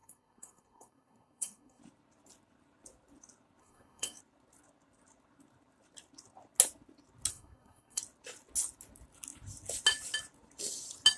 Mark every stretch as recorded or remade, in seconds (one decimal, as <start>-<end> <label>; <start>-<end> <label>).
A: 0.0-1.8 remade; 1.8-3.6 recorded; 3.6-4.2 remade; 4.2-7.3 recorded; 7.3-8.0 remade; 8.0-11.2 recorded